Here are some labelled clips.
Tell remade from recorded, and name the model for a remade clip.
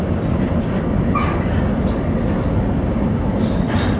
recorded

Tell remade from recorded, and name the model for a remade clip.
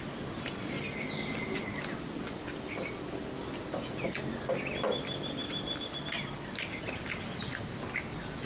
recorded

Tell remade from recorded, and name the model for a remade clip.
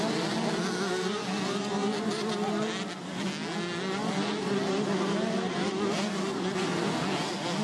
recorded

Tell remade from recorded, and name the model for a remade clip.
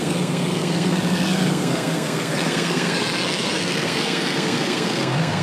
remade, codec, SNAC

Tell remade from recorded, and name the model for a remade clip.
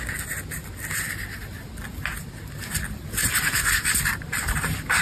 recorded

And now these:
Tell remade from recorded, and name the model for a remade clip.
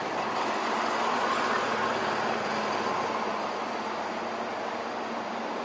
recorded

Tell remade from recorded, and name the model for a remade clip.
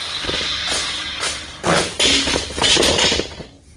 recorded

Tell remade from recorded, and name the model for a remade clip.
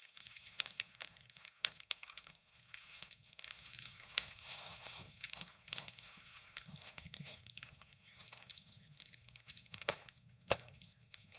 remade, codec, SNAC